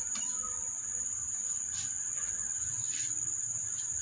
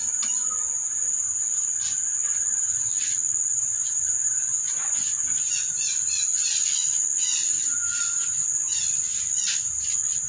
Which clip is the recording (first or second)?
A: second